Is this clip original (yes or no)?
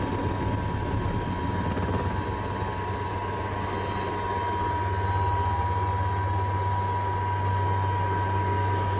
yes